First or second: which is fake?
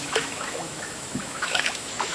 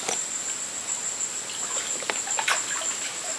first